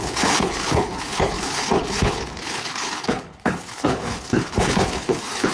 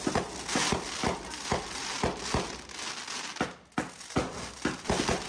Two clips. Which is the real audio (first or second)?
second